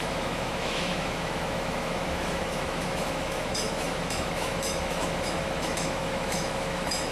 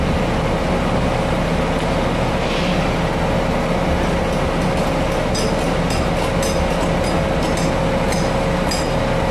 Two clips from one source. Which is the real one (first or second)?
second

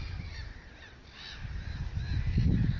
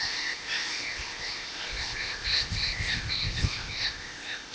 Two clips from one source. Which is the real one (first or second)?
first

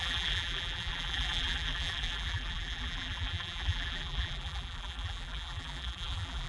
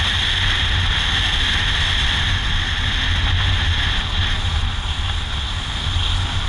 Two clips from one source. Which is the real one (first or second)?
second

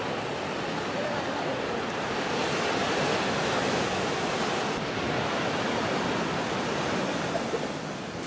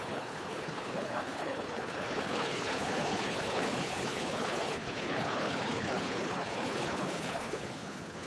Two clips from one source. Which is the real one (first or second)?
first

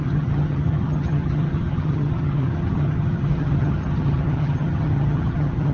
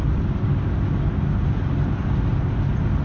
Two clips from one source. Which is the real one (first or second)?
second